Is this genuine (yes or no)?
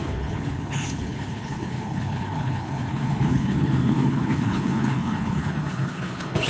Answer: no